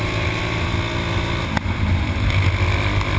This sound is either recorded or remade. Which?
recorded